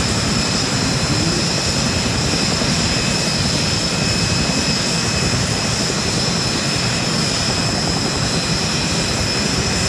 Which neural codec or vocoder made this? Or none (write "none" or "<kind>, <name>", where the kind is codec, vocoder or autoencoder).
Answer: none